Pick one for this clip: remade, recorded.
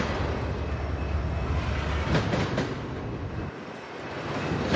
recorded